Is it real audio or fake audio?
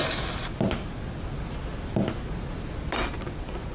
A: real